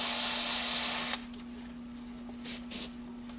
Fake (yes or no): no